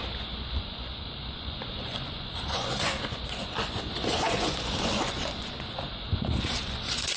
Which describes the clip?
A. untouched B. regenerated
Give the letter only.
B